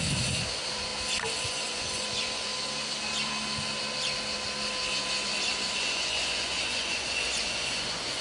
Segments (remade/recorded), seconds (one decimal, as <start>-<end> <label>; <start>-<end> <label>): 0.0-0.9 remade; 0.9-1.4 recorded; 1.4-2.5 remade; 2.5-5.7 recorded; 5.7-8.2 remade